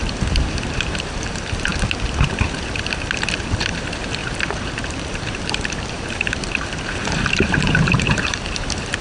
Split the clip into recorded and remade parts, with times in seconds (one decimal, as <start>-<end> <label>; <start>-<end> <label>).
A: 0.0-1.7 remade; 1.7-3.6 recorded; 3.6-9.0 remade